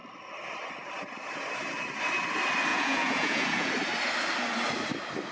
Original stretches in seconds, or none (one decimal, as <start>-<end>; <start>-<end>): 0.0-2.7; 3.7-5.3